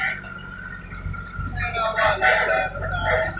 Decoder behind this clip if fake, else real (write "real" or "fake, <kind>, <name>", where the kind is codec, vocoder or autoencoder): real